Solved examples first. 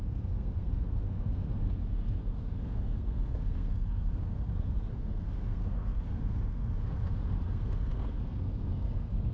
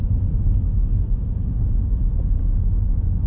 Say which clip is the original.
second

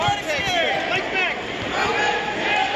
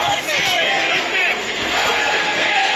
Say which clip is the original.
first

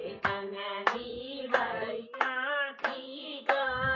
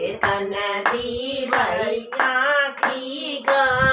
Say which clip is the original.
second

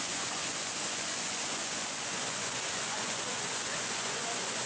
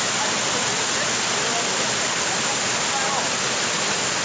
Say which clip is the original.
second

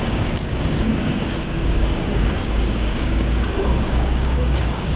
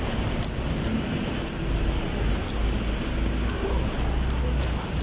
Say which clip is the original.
second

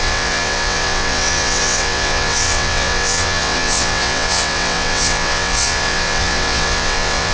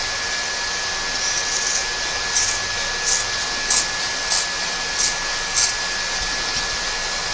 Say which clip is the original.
second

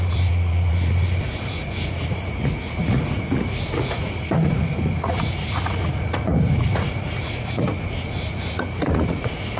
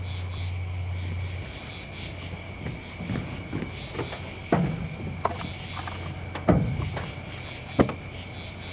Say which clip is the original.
second